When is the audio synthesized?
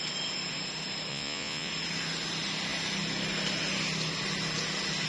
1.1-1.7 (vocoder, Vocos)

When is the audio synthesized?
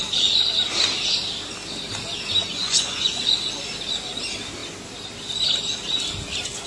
2.5-3.2 (vocoder, Vocos)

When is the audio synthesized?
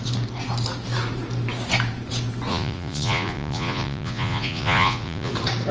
2.5-5.3 (vocoder, Vocos)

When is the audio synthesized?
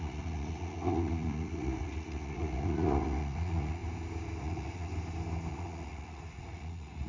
0.0-3.8 (vocoder, Vocos); 4.4-4.9; 5.5-7.1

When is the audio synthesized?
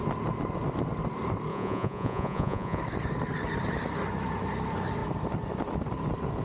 1.5-2.8 (vocoder, Vocos)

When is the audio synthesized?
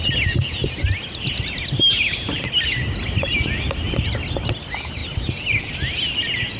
none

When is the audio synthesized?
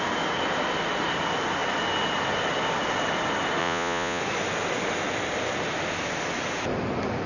3.6-4.2 (vocoder, Vocos)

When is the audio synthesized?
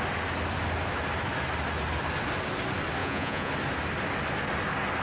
3.0-3.5 (vocoder, Vocos)